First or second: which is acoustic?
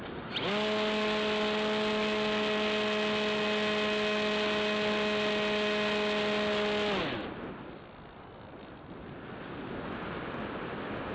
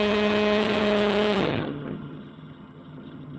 first